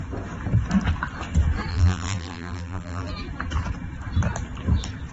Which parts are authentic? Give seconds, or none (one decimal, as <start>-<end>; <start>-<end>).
0.0-1.7; 3.1-5.1